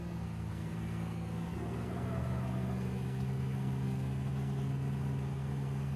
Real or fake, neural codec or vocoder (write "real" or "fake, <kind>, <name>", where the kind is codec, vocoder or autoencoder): fake, codec, SNAC